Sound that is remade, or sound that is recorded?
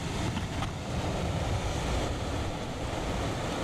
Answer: recorded